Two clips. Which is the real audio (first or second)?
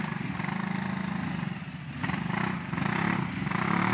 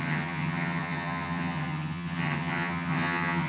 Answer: first